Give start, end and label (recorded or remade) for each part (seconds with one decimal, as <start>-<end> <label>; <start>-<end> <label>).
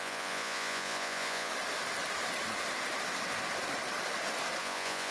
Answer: 0.0-1.5 remade; 1.5-4.6 recorded; 4.6-5.1 remade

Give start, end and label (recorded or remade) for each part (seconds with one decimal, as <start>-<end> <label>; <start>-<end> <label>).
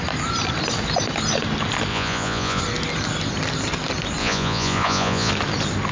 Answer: 0.0-1.9 recorded; 1.9-2.6 remade; 2.6-4.2 recorded; 4.2-5.3 remade; 5.3-5.9 recorded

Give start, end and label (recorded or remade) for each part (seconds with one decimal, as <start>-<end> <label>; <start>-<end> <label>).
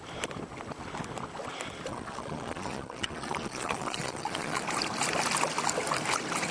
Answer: 0.0-1.9 recorded; 1.9-4.6 remade; 4.6-6.5 recorded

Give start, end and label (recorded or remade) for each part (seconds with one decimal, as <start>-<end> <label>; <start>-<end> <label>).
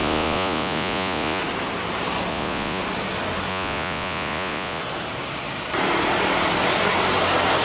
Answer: 0.0-1.4 remade; 1.4-2.3 recorded; 2.3-2.8 remade; 2.8-3.5 recorded; 3.5-4.8 remade; 4.8-7.6 recorded